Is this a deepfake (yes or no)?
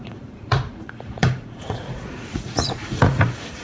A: yes